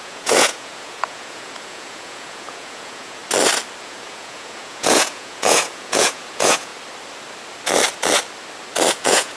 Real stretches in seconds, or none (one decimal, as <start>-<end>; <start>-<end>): 3.2-3.8; 6.7-8.9